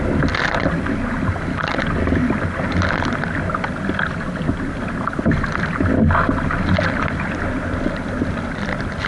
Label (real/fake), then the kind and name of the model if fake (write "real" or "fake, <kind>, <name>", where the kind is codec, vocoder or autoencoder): real